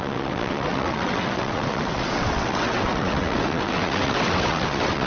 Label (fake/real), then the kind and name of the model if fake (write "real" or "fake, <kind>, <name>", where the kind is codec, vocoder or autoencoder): fake, vocoder, WaveNeXt